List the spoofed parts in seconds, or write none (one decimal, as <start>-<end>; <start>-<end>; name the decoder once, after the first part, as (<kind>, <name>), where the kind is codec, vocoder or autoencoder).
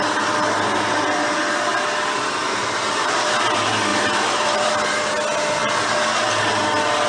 2.4-3.1 (vocoder, BigVGAN v2); 3.9-4.7